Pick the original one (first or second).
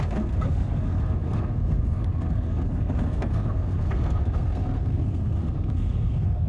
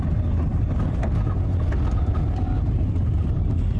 second